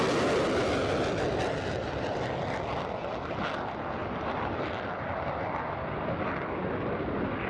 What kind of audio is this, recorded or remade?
recorded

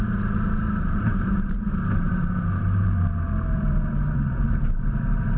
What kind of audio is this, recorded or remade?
remade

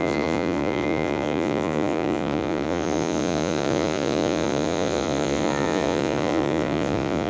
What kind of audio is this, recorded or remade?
remade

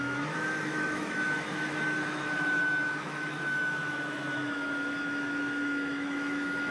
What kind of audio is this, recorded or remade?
remade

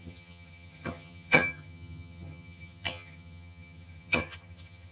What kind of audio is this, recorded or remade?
remade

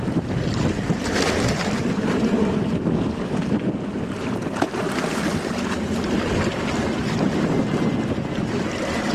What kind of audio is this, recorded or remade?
recorded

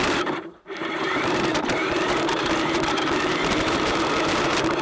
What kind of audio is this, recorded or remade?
remade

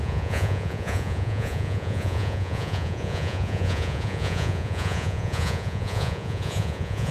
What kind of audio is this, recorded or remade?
remade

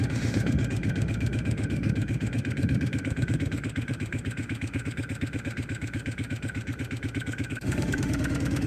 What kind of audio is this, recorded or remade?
remade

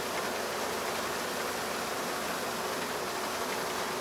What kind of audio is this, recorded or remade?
recorded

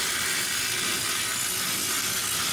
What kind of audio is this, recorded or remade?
recorded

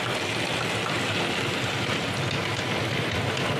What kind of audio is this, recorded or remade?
recorded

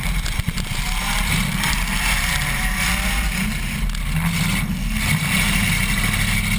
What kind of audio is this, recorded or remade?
recorded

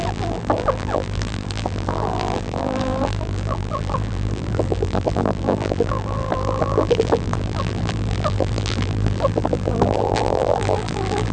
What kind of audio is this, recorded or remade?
remade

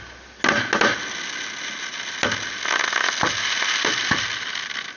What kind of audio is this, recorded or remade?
recorded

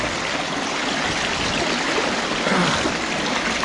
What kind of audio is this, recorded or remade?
recorded